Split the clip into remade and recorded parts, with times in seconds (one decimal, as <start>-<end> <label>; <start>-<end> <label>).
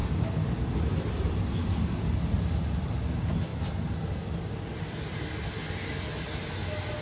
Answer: 0.0-7.0 recorded